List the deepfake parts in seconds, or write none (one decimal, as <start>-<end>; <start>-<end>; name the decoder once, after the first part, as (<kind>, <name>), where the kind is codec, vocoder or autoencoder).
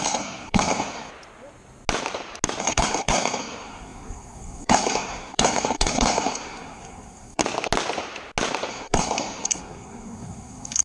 0.0-1.1 (codec, SNAC); 2.6-7.4; 8.7-10.8